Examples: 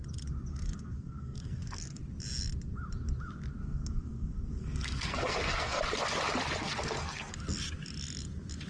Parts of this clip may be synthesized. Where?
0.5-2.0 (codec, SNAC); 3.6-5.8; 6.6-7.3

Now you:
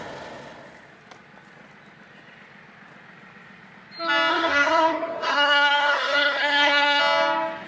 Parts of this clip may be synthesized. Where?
4.3-7.0 (codec, SNAC)